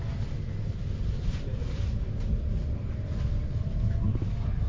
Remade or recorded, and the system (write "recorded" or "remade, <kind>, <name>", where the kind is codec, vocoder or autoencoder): recorded